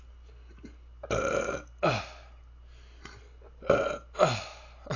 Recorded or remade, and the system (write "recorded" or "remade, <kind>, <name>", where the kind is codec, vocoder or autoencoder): recorded